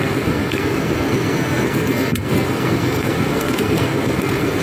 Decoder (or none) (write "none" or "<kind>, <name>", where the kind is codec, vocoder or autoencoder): codec, SNAC